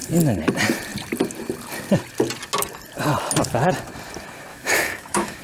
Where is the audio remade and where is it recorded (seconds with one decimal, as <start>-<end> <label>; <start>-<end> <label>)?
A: 0.0-4.5 recorded; 4.5-5.4 remade